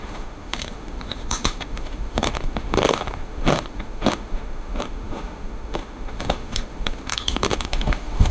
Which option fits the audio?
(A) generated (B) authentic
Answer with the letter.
A